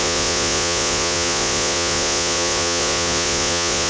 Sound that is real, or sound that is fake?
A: fake